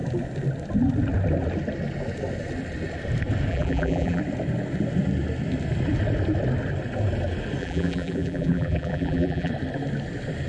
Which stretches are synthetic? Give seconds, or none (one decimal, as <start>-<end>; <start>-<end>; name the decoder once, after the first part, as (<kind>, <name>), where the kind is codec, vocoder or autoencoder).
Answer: 3.5-4.2 (vocoder, BigVGAN v2); 7.6-9.5